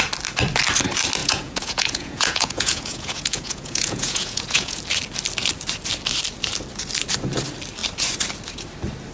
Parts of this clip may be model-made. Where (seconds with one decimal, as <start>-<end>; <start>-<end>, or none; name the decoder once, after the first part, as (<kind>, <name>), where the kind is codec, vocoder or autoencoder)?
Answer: 1.2-4.8 (vocoder, Vocos)